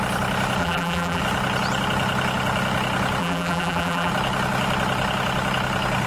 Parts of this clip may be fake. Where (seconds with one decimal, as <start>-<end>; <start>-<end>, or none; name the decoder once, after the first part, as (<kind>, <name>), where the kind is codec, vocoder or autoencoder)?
0.6-1.2 (vocoder, BigVGAN v2); 3.2-4.1